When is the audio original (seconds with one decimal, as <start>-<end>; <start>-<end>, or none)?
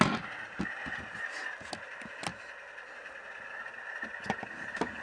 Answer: 0.0-5.0